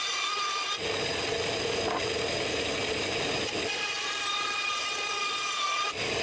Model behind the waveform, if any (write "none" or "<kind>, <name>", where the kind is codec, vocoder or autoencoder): none